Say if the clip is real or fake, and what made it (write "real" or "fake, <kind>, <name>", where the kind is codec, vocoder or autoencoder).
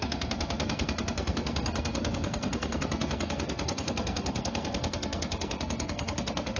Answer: fake, codec, SNAC